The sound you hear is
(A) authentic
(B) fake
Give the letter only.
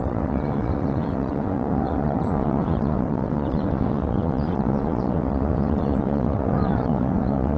B